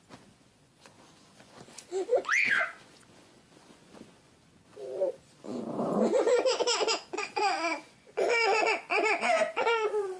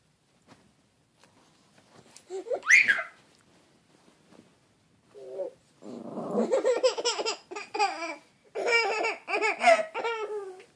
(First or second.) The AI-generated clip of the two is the first